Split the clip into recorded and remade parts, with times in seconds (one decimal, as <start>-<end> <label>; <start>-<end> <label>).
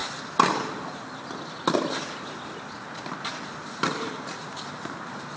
0.0-5.4 recorded